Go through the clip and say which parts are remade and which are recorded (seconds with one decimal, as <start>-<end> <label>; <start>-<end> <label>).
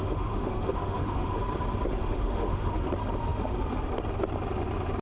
0.0-1.4 remade; 1.4-2.0 recorded; 2.0-2.9 remade; 2.9-5.0 recorded